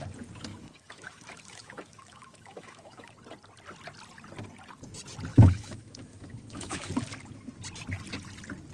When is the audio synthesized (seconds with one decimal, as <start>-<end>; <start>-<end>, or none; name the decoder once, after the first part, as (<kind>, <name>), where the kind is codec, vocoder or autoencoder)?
0.5-3.1 (autoencoder, DAC-VAE); 5.3-6.9